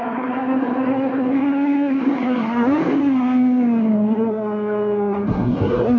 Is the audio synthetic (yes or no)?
yes